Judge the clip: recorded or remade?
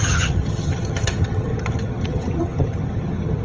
remade